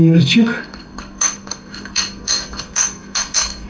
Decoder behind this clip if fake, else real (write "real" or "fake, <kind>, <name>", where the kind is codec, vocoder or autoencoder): fake, codec, SNAC